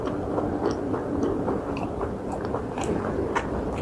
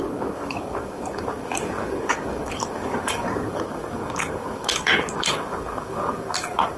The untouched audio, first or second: first